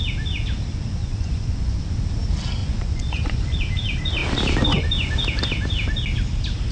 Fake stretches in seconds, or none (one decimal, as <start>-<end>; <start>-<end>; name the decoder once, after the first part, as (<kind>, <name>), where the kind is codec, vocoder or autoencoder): 1.0-1.8 (vocoder, Vocos); 2.6-3.6